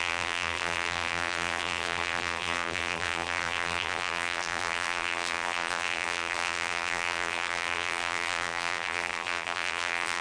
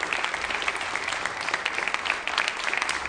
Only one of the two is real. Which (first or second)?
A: second